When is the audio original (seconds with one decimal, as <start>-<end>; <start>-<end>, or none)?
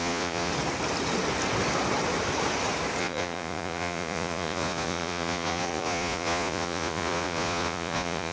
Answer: 0.5-3.0